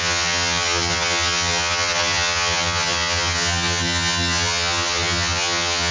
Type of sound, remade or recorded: remade